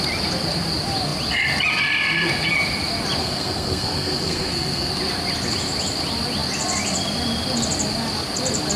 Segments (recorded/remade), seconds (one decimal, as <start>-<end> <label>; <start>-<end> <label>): 0.0-3.2 recorded; 3.2-4.9 remade; 4.9-8.8 recorded